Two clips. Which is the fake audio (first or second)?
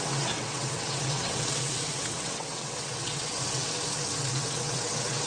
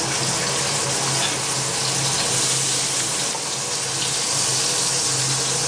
first